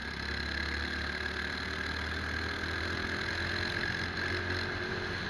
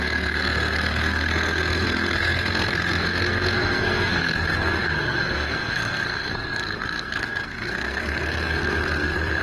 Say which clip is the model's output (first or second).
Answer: second